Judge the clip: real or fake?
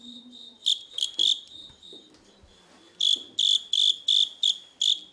fake